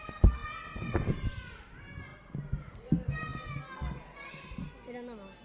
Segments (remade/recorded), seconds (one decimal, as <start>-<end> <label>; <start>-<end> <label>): 0.0-5.4 recorded